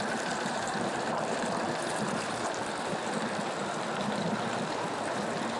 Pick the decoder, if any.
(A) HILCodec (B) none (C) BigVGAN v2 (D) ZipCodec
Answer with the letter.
C